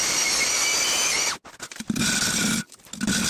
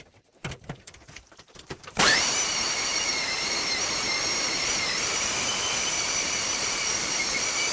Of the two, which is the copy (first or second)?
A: second